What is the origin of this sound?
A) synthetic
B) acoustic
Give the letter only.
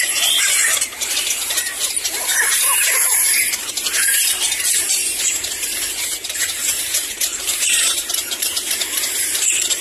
A